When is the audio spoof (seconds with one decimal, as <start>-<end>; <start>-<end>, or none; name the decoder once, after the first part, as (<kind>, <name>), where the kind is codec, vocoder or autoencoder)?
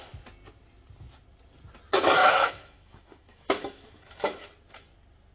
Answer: 2.2-4.5 (autoencoder, DAC-VAE)